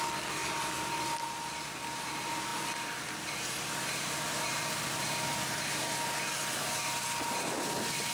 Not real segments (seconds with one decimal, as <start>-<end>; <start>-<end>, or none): none